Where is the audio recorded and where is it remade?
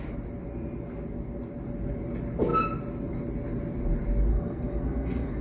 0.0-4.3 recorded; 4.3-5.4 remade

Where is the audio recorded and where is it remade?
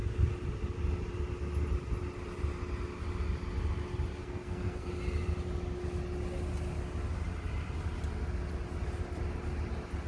0.0-4.2 recorded; 4.2-4.9 remade; 4.9-10.1 recorded